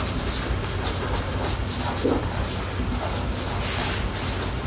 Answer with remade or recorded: recorded